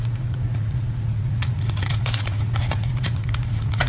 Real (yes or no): no